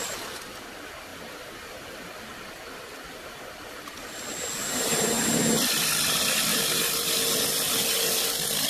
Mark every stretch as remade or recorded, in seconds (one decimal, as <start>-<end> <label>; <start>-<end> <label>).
0.0-1.1 recorded; 1.1-3.4 remade; 3.4-4.6 recorded; 4.6-5.4 remade; 5.4-6.5 recorded; 6.5-7.1 remade; 7.1-8.7 recorded